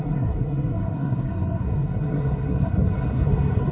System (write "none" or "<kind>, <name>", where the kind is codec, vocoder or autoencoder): codec, SNAC